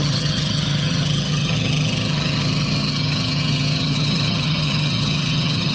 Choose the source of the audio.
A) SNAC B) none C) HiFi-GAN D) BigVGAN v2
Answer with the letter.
C